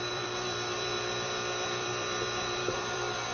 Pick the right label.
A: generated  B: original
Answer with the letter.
A